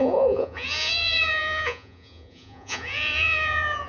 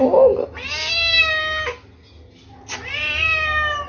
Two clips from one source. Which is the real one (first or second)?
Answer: second